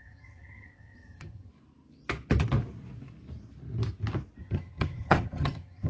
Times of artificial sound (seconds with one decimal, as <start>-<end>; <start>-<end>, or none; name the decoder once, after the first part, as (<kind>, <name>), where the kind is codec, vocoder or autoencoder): 0.0-1.5 (vocoder, HiFi-GAN); 4.4-5.9